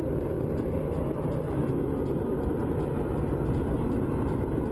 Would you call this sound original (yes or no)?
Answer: yes